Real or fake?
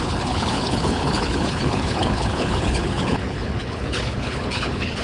fake